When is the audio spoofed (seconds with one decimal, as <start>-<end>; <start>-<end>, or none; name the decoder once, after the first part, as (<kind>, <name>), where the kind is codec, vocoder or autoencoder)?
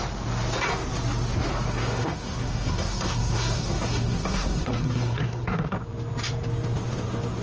1.7-5.7 (codec, SNAC)